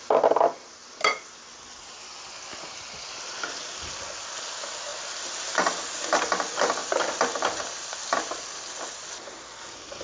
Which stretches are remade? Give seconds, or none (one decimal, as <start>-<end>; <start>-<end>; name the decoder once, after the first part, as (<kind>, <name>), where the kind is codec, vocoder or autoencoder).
none